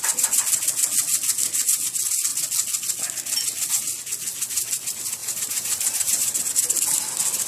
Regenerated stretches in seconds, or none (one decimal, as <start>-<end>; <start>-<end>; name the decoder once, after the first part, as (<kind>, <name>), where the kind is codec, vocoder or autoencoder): 5.2-6.4 (vocoder, BigVGAN v2)

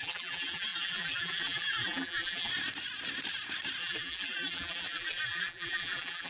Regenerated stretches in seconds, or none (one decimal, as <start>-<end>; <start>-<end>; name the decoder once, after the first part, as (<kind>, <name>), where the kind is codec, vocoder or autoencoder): 0.0-2.5 (vocoder, BigVGAN v2); 3.8-6.3

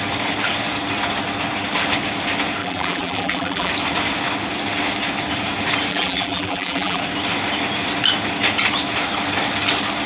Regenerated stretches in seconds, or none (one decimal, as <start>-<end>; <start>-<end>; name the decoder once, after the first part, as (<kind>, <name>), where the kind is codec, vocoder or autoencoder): 2.6-3.7 (vocoder, BigVGAN v2); 5.9-7.0

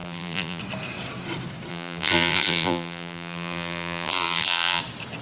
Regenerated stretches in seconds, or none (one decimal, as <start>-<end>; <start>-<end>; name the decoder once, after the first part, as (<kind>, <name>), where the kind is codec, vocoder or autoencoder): 0.0-0.6 (vocoder, BigVGAN v2); 1.7-4.8

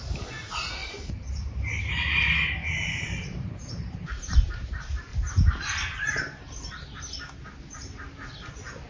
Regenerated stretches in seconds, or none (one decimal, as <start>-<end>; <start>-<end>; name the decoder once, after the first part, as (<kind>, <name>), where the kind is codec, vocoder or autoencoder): 0.8-4.4 (vocoder, BigVGAN v2)

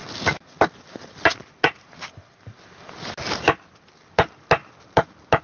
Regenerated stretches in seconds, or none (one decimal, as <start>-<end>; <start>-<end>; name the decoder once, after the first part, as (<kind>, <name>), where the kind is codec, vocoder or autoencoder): none

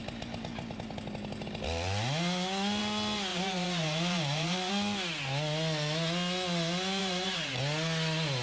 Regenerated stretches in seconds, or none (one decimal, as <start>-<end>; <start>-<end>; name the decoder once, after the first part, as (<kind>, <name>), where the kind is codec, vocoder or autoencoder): 3.3-4.7 (vocoder, BigVGAN v2); 7.0-7.6